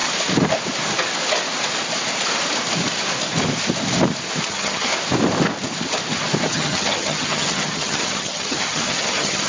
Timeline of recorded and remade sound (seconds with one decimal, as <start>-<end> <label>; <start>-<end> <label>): 0.0-4.5 recorded; 4.5-4.9 remade; 4.9-6.5 recorded; 6.5-9.5 remade